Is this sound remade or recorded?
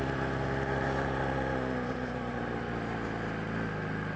recorded